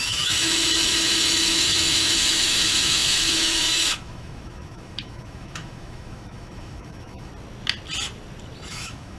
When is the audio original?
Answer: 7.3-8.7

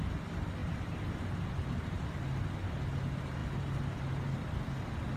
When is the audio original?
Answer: 0.0-5.2

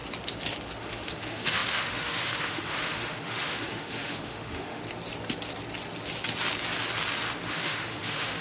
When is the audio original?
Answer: 0.0-0.8; 4.8-7.5